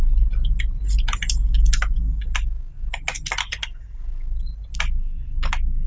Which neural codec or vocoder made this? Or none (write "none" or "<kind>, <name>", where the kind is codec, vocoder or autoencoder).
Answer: none